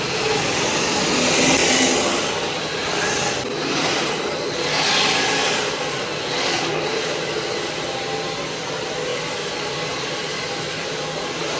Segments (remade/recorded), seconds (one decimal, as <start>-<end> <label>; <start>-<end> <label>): 0.0-11.6 recorded